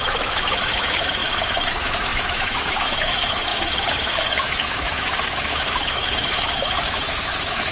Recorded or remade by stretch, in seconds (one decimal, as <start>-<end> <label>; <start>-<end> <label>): 0.0-7.7 remade